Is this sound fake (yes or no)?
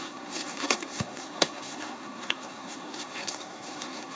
yes